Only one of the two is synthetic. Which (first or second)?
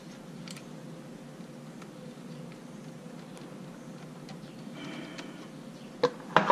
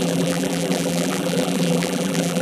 second